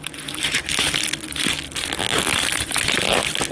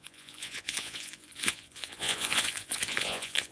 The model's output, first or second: second